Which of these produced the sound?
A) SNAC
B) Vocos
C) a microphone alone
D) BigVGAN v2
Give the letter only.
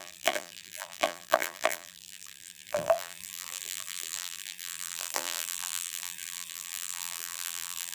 D